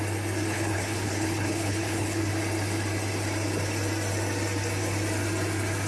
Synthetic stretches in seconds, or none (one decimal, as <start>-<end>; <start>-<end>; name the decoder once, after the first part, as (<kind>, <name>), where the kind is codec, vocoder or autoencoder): 0.5-2.3 (codec, HILCodec)